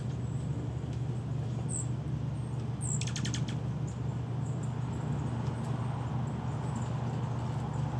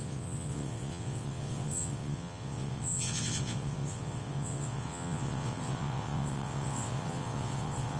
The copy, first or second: second